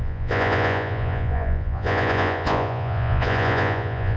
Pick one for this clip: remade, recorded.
remade